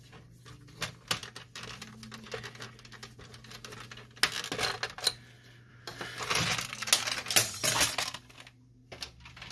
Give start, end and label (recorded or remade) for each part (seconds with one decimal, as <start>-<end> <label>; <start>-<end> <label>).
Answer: 0.0-9.5 recorded